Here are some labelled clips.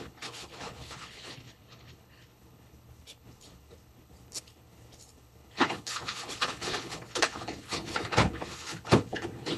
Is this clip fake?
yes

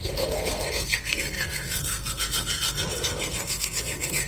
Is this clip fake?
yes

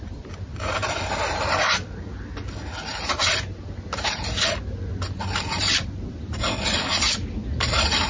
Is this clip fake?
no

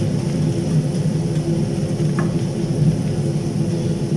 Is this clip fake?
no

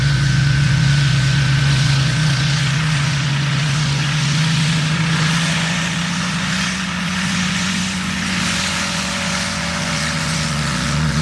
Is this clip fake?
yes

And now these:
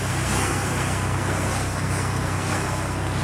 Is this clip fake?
yes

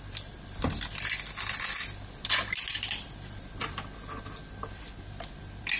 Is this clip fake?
yes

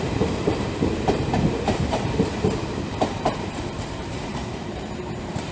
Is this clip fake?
yes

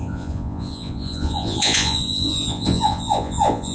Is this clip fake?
yes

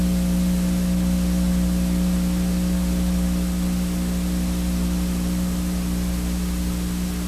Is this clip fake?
no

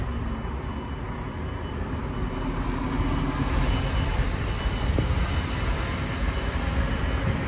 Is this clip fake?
no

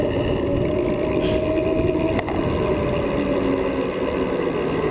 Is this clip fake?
no